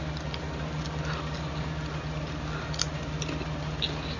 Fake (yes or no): no